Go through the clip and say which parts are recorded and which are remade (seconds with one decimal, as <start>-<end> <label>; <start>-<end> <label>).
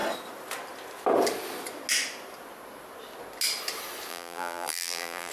0.0-4.1 recorded; 4.1-5.3 remade